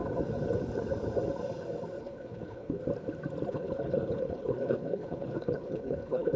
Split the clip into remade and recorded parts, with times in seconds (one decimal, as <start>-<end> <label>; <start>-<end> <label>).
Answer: 0.0-2.0 recorded; 2.0-2.8 remade; 2.8-3.5 recorded; 3.5-6.4 remade